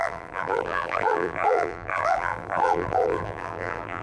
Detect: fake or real fake